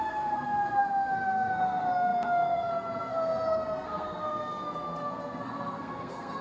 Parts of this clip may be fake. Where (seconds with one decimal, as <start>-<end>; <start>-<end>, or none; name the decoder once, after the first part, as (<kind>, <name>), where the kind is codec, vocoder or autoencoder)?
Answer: 0.0-6.4 (codec, SNAC)